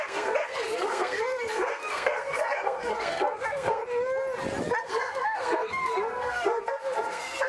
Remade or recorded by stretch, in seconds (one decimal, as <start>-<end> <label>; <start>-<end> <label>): 0.0-3.8 remade; 3.8-4.8 recorded; 4.8-7.5 remade